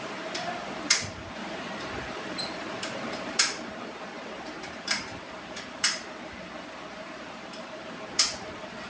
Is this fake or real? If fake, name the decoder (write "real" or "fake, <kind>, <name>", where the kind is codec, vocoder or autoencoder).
fake, vocoder, BigVGAN v2